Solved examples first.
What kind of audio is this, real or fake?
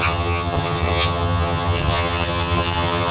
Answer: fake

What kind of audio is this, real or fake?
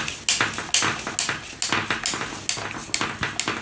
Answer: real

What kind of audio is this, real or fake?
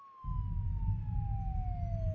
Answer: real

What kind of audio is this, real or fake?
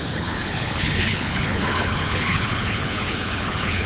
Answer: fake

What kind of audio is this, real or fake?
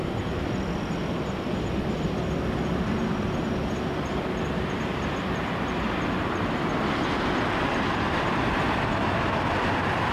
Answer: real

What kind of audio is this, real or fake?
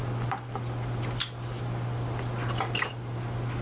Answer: real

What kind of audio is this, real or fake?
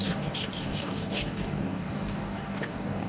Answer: fake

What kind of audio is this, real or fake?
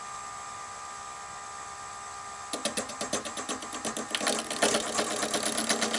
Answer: real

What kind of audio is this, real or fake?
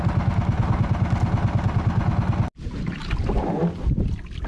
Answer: real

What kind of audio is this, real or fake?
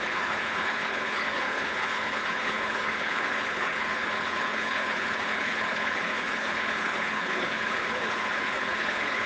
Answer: fake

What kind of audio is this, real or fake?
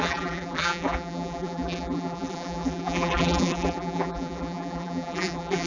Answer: fake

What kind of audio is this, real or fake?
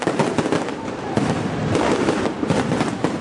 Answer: fake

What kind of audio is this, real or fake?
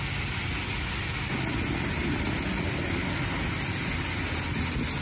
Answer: real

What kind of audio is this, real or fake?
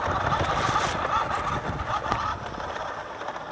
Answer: real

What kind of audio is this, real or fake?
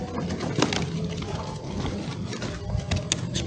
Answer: real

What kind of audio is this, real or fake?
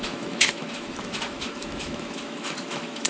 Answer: fake